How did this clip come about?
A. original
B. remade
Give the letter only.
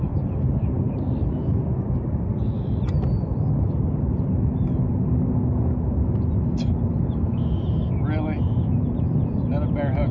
A